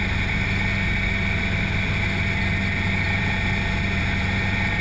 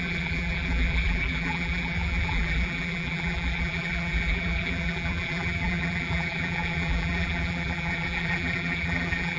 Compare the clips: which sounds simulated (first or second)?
second